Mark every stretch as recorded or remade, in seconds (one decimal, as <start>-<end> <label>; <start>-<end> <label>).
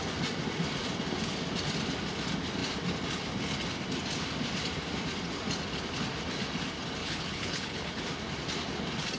0.0-7.0 recorded; 7.0-8.0 remade; 8.0-9.2 recorded